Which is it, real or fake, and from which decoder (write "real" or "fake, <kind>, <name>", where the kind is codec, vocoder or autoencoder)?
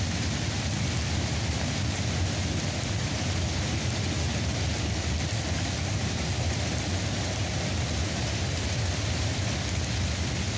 real